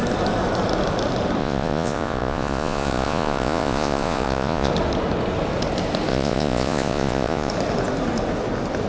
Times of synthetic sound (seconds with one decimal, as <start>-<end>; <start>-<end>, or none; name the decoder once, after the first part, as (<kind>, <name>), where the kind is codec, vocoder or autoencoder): 1.4-4.7 (vocoder, Vocos); 6.1-7.5